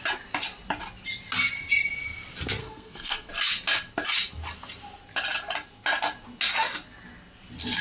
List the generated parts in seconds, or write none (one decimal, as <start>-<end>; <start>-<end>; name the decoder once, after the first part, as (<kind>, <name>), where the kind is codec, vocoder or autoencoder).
2.6-3.3 (codec, SNAC)